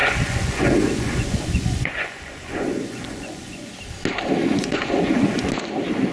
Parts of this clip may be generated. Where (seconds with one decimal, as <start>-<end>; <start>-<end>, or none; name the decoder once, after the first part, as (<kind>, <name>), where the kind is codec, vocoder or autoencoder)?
0.0-3.7 (vocoder, Vocos); 4.4-5.5